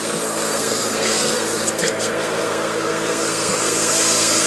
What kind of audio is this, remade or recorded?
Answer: remade